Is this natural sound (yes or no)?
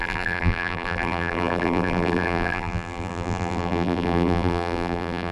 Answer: no